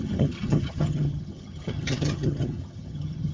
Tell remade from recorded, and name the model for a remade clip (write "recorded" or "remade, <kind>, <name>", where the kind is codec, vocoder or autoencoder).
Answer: remade, vocoder, HiFi-GAN